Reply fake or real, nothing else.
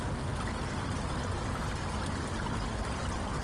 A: real